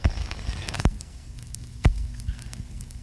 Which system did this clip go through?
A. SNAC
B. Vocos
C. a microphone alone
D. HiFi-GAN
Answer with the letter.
A